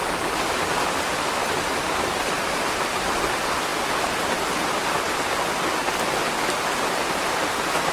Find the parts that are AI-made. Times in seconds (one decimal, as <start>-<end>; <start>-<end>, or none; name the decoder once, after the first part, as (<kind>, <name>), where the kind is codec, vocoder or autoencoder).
none